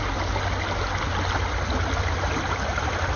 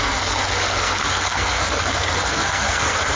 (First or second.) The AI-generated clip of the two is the second